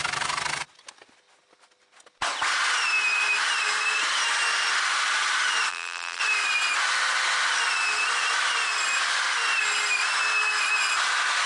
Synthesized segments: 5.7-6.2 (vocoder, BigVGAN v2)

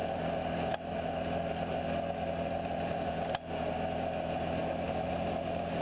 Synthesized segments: 0.0-3.5 (vocoder, BigVGAN v2); 4.6-5.1

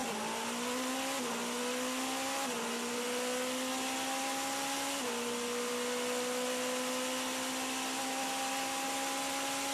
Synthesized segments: none

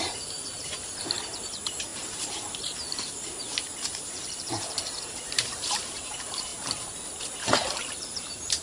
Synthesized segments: 0.0-8.6 (vocoder, BigVGAN v2)